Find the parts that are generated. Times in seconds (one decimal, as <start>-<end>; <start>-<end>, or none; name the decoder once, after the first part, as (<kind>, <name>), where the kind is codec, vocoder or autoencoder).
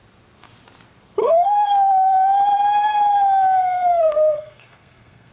1.2-1.9 (codec, SNAC); 3.9-5.3